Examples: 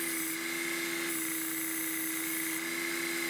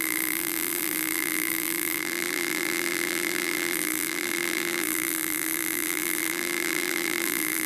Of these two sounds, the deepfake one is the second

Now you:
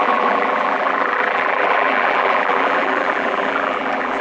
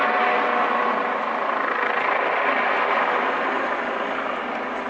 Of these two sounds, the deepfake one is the first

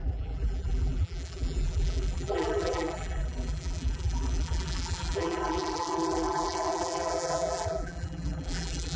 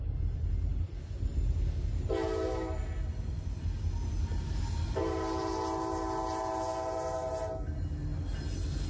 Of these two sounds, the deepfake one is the first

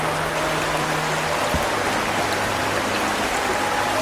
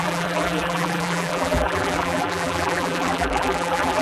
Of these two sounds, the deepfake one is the second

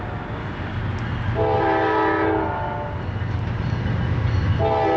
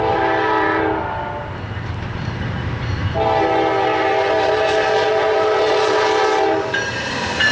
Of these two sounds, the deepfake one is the second